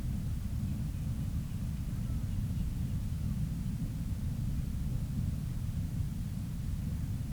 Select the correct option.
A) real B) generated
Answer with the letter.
A